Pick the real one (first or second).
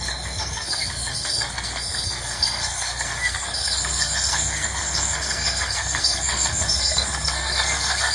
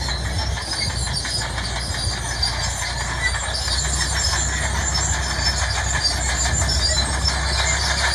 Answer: second